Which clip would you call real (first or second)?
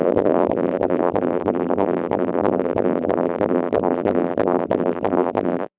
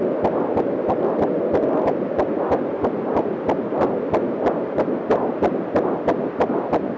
second